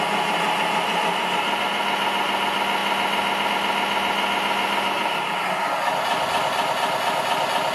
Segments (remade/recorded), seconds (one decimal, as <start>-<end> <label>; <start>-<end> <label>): 0.0-7.7 recorded